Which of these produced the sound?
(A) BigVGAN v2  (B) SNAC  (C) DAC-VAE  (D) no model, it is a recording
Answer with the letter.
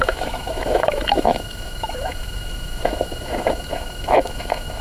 C